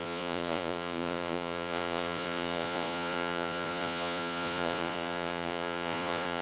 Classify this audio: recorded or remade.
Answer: remade